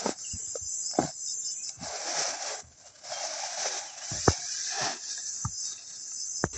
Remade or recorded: recorded